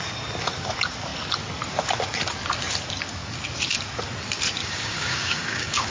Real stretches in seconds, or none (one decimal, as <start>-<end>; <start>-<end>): 0.0-4.6